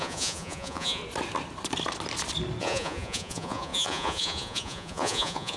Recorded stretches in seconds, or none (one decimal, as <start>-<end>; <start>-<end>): 1.0-2.6